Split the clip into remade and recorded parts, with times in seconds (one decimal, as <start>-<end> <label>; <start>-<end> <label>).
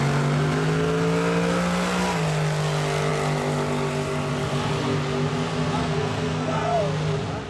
0.0-5.8 recorded; 5.8-6.8 remade; 6.8-7.5 recorded